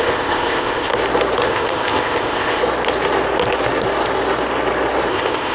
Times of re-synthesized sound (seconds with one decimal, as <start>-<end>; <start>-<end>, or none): 0.0-0.9; 1.5-2.6; 5.1-5.5